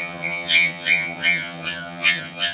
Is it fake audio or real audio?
fake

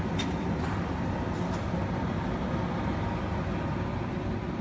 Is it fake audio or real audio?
real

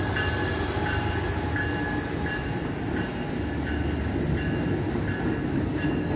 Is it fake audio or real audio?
real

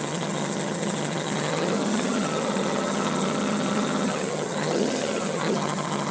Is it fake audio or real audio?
fake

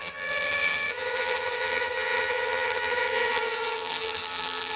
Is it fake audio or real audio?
fake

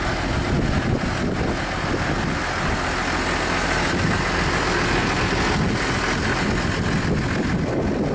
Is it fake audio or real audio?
real